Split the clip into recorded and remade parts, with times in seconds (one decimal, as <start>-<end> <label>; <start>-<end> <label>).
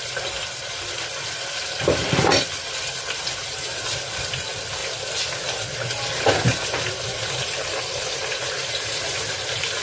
0.0-9.8 recorded